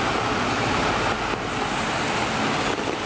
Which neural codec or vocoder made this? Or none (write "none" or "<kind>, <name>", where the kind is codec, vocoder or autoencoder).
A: none